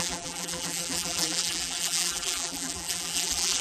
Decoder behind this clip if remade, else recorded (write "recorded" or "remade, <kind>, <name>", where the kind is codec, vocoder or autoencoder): remade, vocoder, BigVGAN v2